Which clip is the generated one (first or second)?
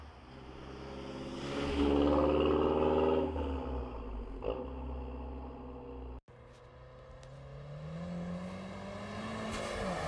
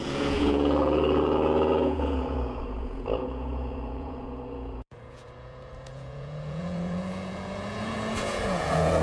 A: second